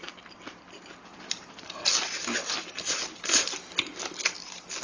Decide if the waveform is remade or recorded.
recorded